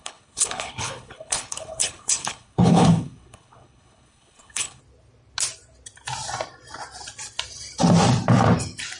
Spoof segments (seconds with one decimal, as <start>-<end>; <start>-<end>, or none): 0.0-4.8